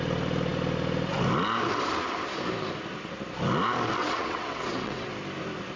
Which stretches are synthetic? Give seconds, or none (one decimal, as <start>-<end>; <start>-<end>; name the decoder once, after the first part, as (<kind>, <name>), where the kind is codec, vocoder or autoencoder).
4.0-5.1 (vocoder, WaveNeXt)